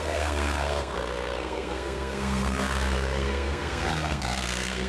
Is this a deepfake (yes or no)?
yes